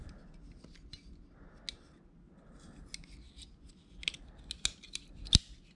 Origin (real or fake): real